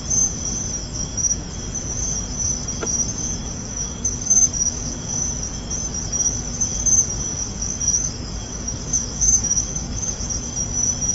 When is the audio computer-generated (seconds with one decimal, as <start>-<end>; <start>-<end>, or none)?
0.8-1.5; 3.4-5.1; 7.3-10.2